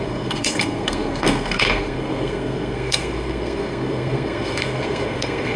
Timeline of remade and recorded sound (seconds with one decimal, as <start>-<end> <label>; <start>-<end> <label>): 0.0-5.6 remade